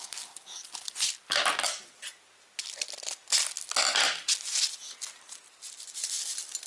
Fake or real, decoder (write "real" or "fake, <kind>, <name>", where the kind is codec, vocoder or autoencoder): real